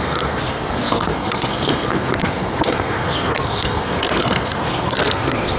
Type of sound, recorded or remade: remade